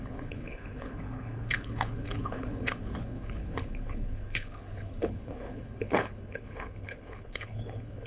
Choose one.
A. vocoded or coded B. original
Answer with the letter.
A